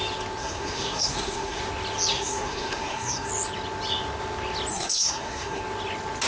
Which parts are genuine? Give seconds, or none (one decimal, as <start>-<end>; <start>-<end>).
0.0-0.4; 1.6-2.1; 3.3-4.7; 5.6-6.3